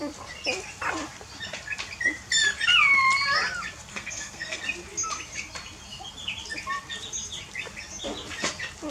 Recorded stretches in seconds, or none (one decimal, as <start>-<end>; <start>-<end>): 0.0-3.9; 4.6-8.9